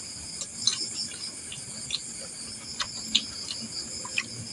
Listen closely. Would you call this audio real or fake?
real